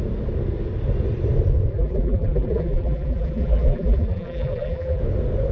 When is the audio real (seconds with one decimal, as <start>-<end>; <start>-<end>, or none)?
0.0-1.7; 5.0-5.5